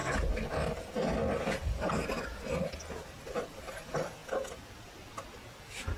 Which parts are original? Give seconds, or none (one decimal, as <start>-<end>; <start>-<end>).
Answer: 0.0-6.0

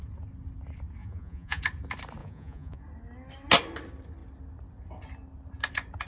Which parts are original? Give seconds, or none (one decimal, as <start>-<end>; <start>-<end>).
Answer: 0.0-1.0; 1.6-2.2; 2.8-6.1

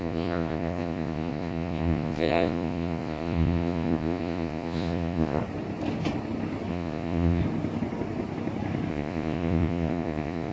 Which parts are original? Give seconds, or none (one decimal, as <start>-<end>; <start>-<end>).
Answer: 5.4-6.7; 7.4-8.9

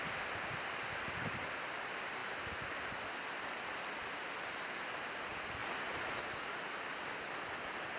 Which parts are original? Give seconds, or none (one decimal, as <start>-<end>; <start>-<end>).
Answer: 0.0-8.0

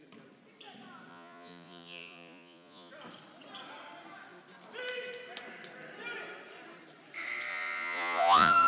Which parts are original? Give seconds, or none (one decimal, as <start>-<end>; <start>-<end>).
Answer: 0.0-1.1; 2.9-7.5

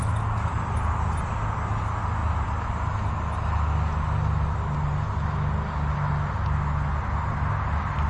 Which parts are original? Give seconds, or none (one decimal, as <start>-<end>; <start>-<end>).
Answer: 0.0-8.1